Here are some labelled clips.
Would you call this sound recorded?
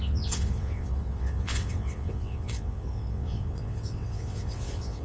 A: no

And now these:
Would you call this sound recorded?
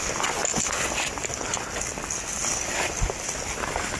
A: yes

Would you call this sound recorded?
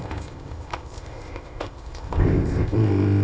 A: no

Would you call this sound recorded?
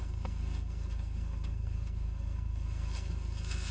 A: no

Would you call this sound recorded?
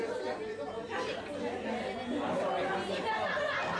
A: yes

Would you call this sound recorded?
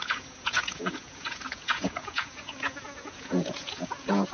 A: no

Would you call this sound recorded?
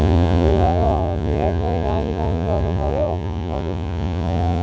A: no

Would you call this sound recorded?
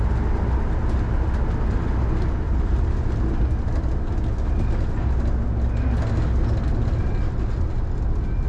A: yes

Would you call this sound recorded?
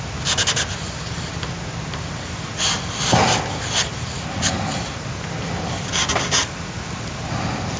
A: yes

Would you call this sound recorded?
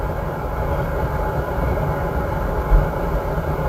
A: yes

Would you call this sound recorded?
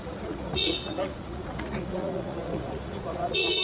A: no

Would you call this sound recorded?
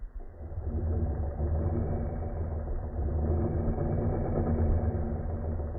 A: yes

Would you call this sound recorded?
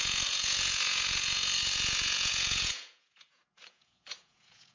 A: no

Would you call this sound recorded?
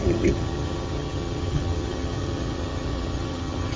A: no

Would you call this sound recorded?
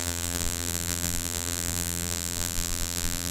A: no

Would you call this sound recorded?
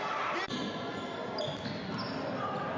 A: yes